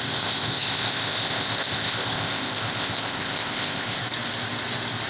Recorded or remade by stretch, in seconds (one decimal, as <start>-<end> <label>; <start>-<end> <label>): 0.0-4.0 remade; 4.0-5.1 recorded